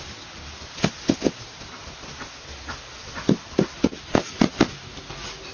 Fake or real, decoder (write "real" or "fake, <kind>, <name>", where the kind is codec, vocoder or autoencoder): real